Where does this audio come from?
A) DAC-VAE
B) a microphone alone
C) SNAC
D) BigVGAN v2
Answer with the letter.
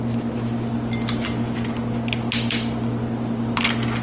B